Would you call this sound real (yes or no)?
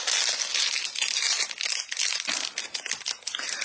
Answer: yes